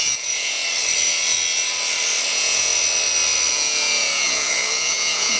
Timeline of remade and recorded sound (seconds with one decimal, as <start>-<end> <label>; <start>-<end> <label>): 0.0-0.6 remade; 0.6-2.3 recorded; 2.3-2.7 remade; 2.7-3.5 recorded; 3.5-5.4 remade